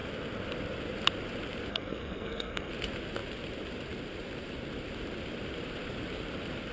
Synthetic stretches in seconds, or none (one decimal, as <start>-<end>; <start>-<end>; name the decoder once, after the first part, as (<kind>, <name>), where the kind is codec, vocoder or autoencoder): 1.7-2.7 (codec, SNAC)